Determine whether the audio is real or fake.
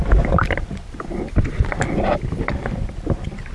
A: real